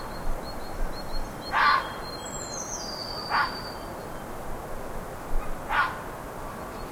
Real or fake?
real